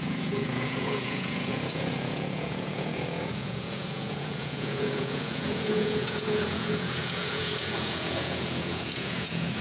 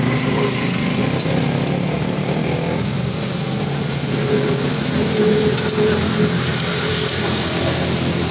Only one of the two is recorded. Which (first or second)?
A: second